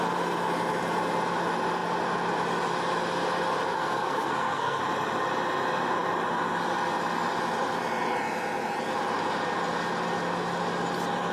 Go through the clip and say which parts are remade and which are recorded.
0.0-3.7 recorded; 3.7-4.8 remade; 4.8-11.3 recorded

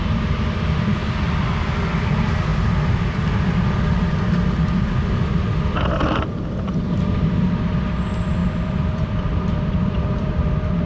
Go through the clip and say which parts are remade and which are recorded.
0.0-2.5 recorded; 2.5-4.1 remade; 4.1-8.4 recorded; 8.4-10.4 remade; 10.4-10.9 recorded

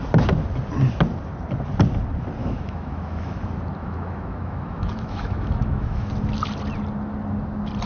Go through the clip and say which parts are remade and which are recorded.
0.0-2.4 recorded; 2.4-3.4 remade; 3.4-3.8 recorded; 3.8-6.1 remade; 6.1-7.9 recorded

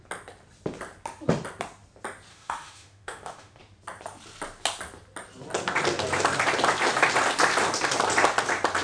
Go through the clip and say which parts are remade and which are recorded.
0.0-2.3 recorded; 2.3-3.6 remade; 3.6-8.8 recorded

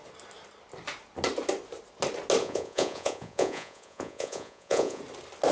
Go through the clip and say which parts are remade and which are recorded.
0.0-2.4 recorded; 2.4-5.0 remade; 5.0-5.5 recorded

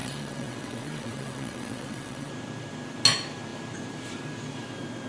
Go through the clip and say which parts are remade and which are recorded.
0.0-2.3 remade; 2.3-5.1 recorded

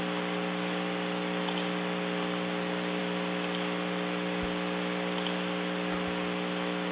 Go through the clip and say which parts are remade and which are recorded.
0.0-6.9 recorded

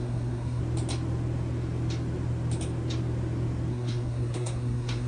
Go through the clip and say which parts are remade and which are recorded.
0.0-0.6 remade; 0.6-3.7 recorded; 3.7-5.1 remade